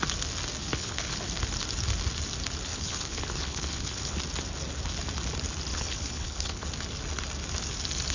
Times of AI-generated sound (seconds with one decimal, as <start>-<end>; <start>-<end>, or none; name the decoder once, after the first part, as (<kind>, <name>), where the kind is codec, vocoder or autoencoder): 0.6-1.2 (codec, HILCodec); 2.7-4.2; 5.7-6.6